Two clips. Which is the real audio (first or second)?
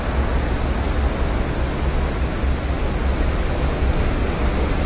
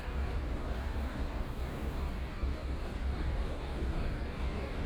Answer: first